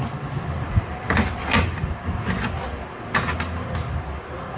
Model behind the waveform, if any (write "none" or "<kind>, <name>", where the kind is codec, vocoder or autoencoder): none